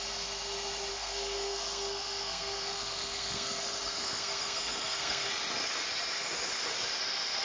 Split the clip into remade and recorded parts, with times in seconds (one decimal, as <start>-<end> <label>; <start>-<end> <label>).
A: 0.0-0.9 recorded; 0.9-5.3 remade; 5.3-7.4 recorded